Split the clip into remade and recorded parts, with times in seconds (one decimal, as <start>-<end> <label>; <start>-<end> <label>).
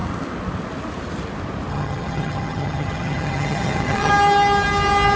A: 0.0-1.7 recorded; 1.7-4.1 remade; 4.1-5.2 recorded